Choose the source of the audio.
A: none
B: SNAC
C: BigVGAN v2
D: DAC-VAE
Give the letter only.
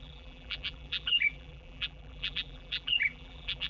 C